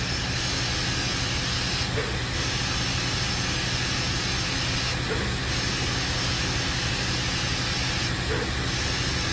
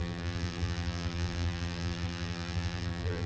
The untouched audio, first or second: first